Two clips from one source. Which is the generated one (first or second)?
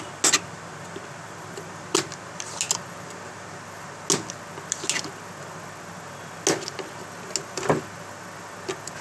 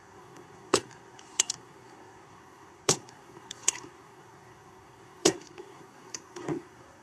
second